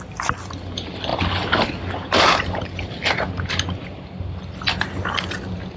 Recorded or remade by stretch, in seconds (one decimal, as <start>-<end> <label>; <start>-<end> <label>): 0.0-5.8 recorded